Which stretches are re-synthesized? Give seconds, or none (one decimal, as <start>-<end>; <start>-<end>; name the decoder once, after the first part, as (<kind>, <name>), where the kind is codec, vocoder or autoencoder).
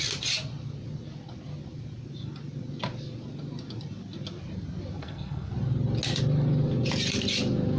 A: 5.0-5.5 (codec, SNAC)